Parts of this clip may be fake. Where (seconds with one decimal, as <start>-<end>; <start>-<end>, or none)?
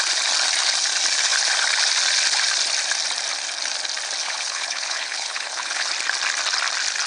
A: 4.2-5.9